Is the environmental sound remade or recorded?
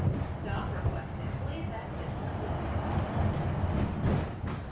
recorded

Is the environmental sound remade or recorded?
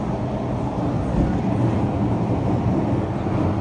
recorded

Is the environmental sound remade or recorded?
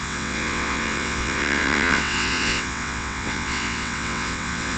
remade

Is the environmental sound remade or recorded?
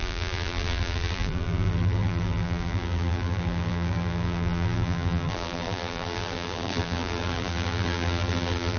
remade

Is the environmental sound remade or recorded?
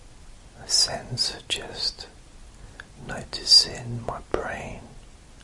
recorded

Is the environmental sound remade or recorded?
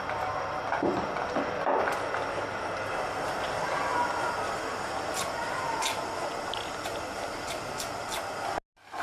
recorded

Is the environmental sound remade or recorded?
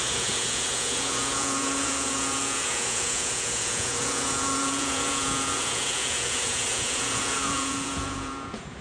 remade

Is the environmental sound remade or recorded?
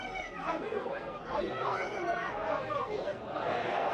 remade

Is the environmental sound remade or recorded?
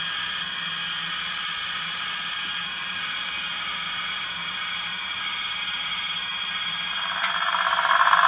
recorded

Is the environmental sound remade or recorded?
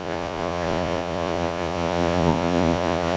remade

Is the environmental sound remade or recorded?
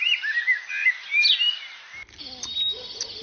recorded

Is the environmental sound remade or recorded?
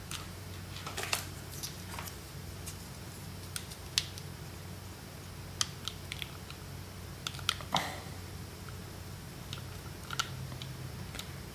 recorded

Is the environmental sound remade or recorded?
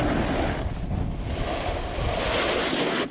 recorded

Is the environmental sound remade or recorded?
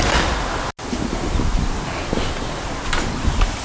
recorded